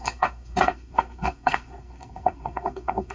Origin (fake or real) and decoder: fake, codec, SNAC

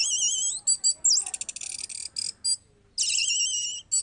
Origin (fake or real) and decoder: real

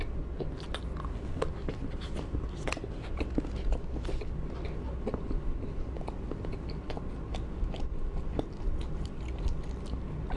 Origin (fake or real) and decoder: real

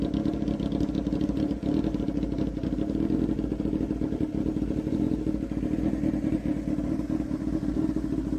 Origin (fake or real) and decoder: real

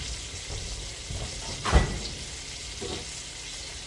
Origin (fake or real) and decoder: real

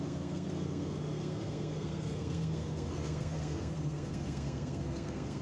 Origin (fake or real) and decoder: fake, codec, SNAC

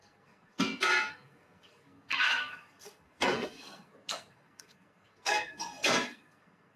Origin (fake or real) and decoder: fake, codec, SNAC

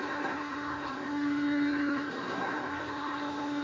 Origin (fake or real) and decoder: fake, codec, SNAC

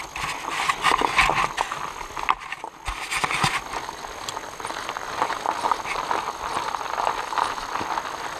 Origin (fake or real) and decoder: real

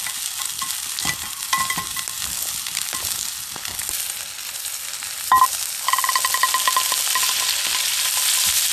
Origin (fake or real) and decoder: real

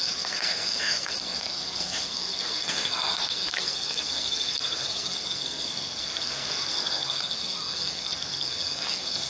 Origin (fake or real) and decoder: fake, codec, SNAC